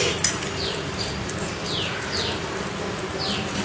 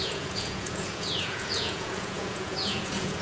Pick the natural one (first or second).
first